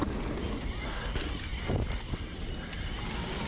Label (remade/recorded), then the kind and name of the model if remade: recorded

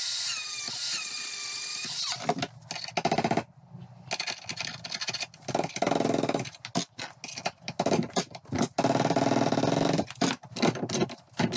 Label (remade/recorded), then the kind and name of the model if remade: recorded